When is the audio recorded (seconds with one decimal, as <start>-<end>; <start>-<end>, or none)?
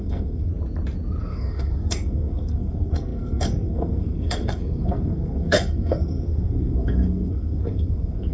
0.5-1.2